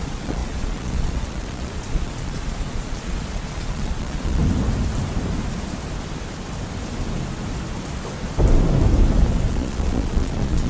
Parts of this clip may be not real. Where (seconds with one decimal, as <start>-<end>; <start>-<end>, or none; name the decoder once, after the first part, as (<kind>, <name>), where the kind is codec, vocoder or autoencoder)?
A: 0.0-4.4 (vocoder, Vocos); 9.5-10.7